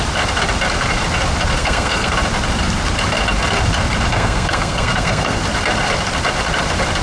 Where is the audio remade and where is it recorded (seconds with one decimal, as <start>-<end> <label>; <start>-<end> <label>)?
0.0-1.6 recorded; 1.6-2.1 remade; 2.1-4.1 recorded; 4.1-5.4 remade; 5.4-7.0 recorded